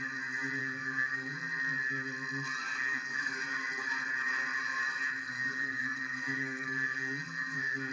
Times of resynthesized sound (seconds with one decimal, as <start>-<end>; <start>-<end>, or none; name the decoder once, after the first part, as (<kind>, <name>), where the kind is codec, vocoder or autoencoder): 0.6-1.3 (codec, SNAC); 2.7-3.4; 5.2-7.9